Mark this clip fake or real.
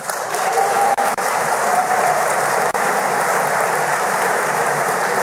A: fake